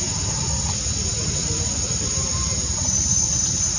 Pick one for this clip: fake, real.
real